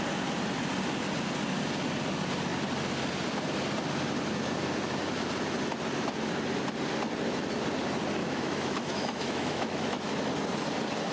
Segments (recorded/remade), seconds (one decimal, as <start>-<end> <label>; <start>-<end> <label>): 0.0-8.2 recorded; 8.2-10.1 remade; 10.1-11.1 recorded